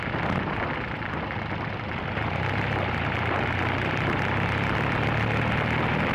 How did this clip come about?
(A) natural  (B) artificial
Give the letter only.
A